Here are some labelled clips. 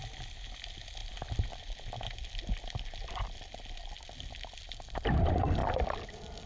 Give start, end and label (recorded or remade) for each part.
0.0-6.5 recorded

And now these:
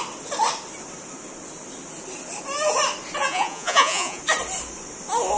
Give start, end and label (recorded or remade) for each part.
0.0-3.2 recorded; 3.2-4.2 remade; 4.2-5.4 recorded

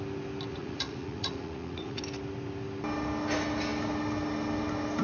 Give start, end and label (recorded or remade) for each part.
0.0-0.5 recorded; 0.5-2.0 remade; 2.0-5.0 recorded

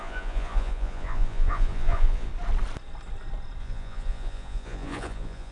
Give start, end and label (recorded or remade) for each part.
0.0-2.3 remade; 2.3-3.6 recorded; 3.6-5.5 remade